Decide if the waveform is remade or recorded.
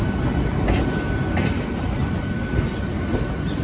recorded